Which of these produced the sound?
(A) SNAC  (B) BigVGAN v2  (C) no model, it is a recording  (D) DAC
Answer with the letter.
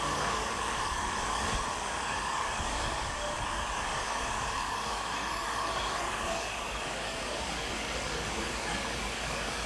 D